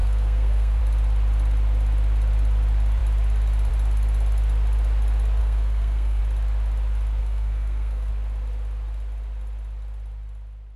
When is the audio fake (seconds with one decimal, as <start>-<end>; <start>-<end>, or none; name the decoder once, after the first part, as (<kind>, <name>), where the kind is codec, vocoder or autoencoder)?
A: 0.0-0.8 (codec, SNAC); 5.4-6.2; 7.2-8.1